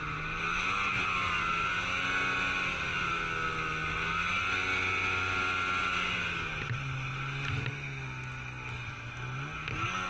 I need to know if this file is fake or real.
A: real